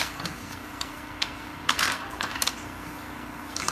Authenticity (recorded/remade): remade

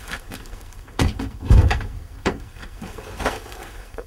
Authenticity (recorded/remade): remade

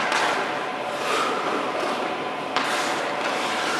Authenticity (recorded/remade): recorded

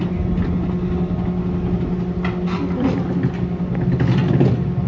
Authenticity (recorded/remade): recorded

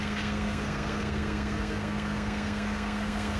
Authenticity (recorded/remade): remade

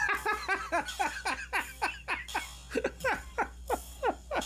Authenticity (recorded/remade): recorded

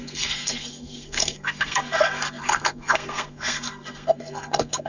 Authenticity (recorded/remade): remade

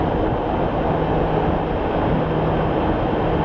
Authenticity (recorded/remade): recorded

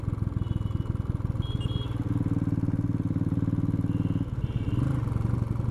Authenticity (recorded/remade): recorded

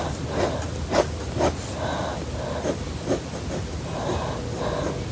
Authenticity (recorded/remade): recorded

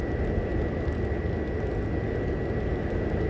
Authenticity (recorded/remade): recorded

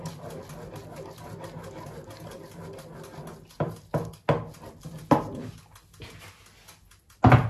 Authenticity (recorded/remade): recorded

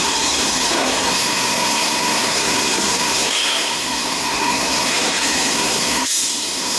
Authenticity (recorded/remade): remade